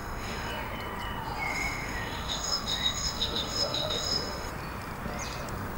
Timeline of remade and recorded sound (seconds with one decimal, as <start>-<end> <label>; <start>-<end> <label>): 0.0-0.5 remade; 0.5-1.5 recorded; 1.5-4.5 remade; 4.5-5.8 recorded